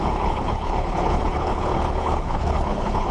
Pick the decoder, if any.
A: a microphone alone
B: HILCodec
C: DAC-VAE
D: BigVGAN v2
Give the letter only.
B